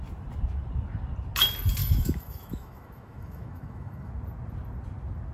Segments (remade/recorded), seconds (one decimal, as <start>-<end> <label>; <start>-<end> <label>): 0.0-1.8 recorded; 1.8-4.1 remade; 4.1-5.3 recorded